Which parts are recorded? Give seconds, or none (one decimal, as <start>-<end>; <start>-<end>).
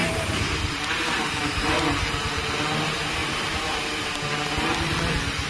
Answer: 1.9-3.2; 4.1-5.5